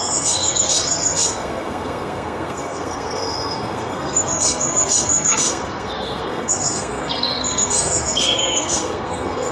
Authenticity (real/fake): fake